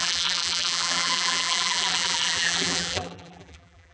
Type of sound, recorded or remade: remade